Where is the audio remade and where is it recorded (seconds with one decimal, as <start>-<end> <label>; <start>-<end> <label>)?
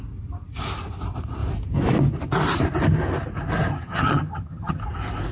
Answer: 0.0-3.7 recorded; 3.7-4.8 remade; 4.8-5.3 recorded